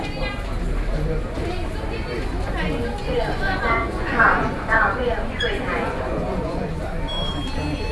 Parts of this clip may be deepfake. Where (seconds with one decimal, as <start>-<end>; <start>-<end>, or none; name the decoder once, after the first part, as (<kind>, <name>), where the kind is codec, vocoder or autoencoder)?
3.0-6.7 (vocoder, Vocos)